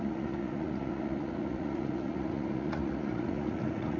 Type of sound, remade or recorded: remade